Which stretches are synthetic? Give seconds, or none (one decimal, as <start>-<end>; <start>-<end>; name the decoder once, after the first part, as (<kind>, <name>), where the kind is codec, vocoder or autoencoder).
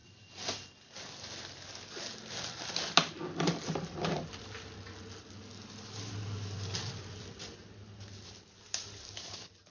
none